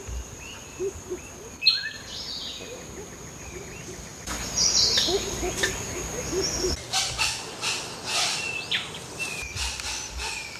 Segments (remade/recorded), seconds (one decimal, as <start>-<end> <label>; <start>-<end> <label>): 0.0-10.6 recorded